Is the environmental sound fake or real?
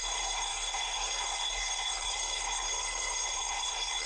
fake